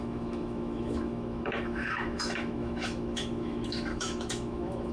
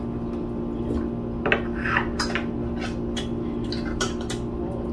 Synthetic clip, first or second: first